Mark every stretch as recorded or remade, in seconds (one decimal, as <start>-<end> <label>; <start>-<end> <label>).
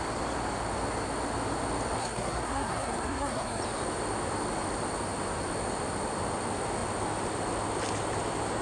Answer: 0.0-2.0 recorded; 2.0-3.6 remade; 3.6-8.6 recorded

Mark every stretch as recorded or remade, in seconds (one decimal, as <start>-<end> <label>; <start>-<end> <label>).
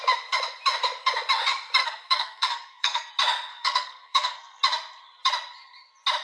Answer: 0.0-1.8 recorded; 1.8-3.1 remade; 3.1-3.5 recorded; 3.5-4.6 remade; 4.6-6.2 recorded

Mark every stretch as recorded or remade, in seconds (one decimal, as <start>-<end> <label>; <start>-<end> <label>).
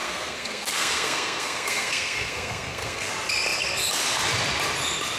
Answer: 0.0-3.1 remade; 3.1-5.2 recorded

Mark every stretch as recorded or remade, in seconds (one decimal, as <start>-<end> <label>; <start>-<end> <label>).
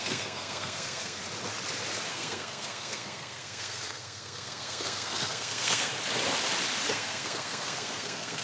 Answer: 0.0-1.2 remade; 1.2-2.1 recorded; 2.1-5.9 remade; 5.9-6.9 recorded; 6.9-8.4 remade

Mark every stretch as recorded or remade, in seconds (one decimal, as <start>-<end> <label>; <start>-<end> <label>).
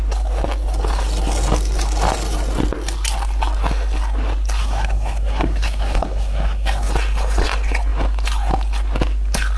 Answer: 0.0-4.6 recorded; 4.6-6.9 remade; 6.9-9.6 recorded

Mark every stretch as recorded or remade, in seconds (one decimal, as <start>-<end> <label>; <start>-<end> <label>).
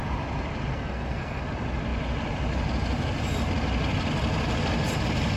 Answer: 0.0-0.7 recorded; 0.7-1.4 remade; 1.4-5.4 recorded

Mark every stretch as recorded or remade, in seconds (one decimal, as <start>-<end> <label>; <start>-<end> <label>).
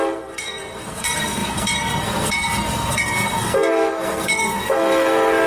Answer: 0.0-5.5 remade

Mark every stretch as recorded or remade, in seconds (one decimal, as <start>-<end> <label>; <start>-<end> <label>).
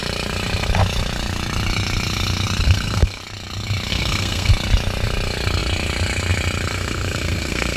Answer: 0.0-2.6 recorded; 2.6-3.2 remade; 3.2-3.9 recorded; 3.9-4.5 remade; 4.5-6.7 recorded; 6.7-7.8 remade